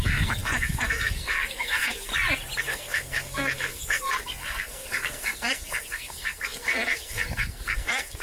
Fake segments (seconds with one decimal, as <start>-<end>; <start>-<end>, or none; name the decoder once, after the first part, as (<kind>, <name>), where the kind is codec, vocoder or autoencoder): 0.0-2.1 (codec, SNAC); 2.6-8.2